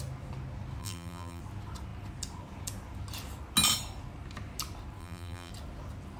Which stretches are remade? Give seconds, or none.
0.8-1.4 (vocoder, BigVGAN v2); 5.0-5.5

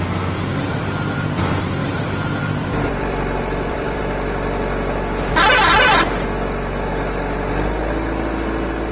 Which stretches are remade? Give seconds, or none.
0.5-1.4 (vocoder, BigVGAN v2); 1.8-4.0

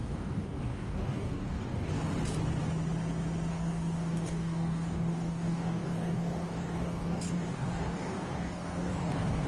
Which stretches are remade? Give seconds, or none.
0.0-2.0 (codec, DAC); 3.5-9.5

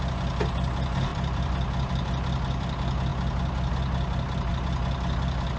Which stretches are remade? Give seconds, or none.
1.1-1.9 (vocoder, BigVGAN v2)

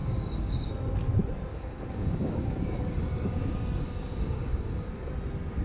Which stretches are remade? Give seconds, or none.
0.0-0.7 (codec, DAC); 1.5-4.9